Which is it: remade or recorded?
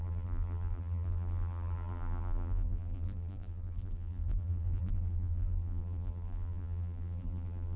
remade